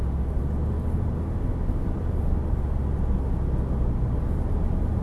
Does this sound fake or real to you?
real